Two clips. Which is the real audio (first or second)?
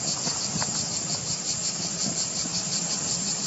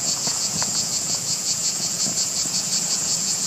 first